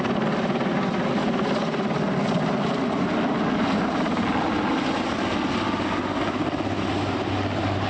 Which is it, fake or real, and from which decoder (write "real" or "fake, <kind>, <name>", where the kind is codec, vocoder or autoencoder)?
real